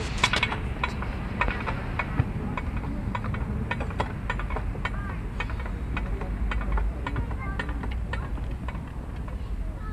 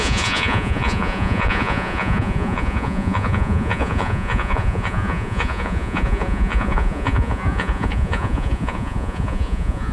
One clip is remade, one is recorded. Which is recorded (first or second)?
first